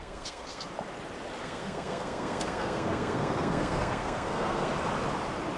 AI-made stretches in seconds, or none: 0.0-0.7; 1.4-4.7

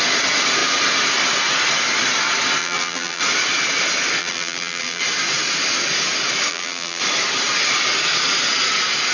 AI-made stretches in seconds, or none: 2.6-3.2; 4.2-5.0; 6.5-7.0

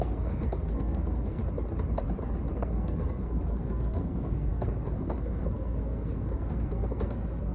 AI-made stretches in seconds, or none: 0.0-1.4; 2.5-7.5